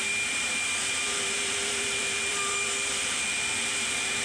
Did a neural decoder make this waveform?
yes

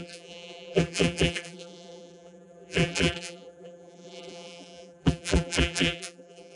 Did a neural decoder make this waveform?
yes